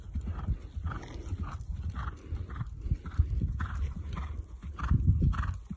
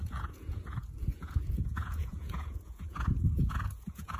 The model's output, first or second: second